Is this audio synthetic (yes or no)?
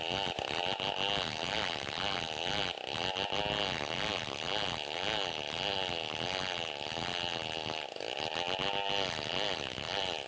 no